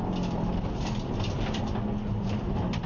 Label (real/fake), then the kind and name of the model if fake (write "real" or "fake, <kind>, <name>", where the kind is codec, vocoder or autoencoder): real